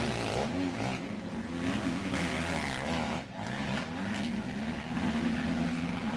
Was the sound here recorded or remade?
recorded